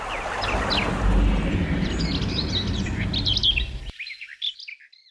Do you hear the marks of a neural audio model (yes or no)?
no